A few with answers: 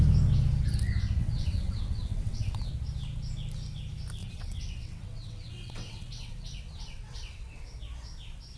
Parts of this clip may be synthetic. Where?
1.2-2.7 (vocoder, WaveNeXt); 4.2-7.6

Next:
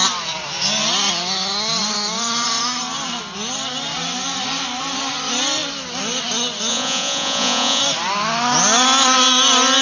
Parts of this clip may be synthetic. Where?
6.7-7.8 (vocoder, Vocos)

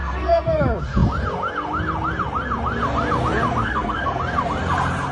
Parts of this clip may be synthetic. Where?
0.0-0.6 (codec, SNAC); 3.6-4.2

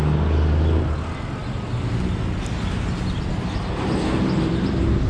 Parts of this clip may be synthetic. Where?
none